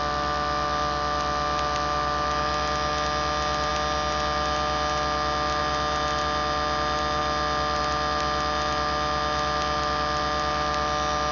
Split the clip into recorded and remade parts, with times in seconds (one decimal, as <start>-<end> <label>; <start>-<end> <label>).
0.0-11.3 recorded